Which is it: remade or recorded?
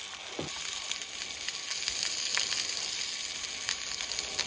recorded